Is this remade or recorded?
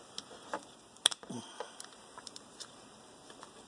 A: remade